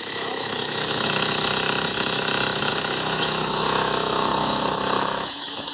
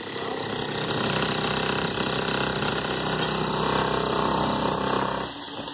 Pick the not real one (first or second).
first